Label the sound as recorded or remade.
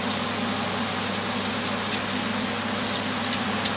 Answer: recorded